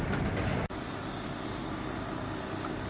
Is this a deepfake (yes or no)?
no